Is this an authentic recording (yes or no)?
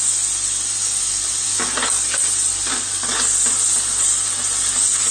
yes